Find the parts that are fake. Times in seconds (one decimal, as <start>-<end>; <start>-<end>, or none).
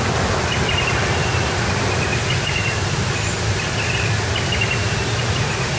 none